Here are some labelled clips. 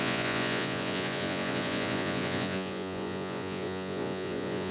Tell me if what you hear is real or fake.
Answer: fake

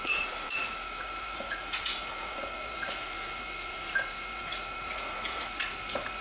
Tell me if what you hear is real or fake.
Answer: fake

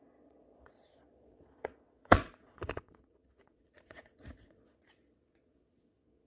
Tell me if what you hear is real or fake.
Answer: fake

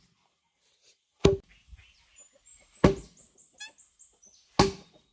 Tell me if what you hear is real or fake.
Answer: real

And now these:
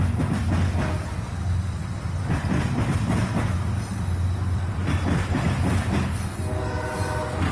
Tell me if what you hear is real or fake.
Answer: real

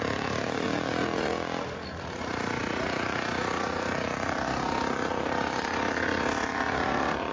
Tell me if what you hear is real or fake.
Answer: fake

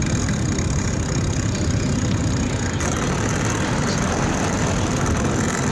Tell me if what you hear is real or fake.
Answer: real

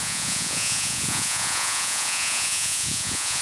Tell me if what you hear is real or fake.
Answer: fake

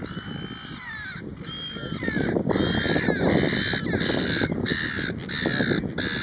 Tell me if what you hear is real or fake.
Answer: real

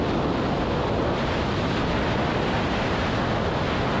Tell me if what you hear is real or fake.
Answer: real